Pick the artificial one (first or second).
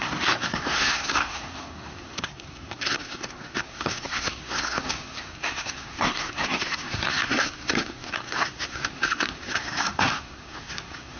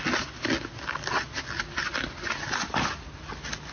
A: first